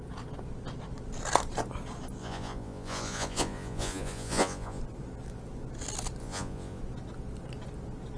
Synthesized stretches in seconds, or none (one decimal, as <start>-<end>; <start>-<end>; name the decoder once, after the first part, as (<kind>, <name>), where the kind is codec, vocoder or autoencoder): 2.2-4.8 (vocoder, Vocos); 6.2-6.8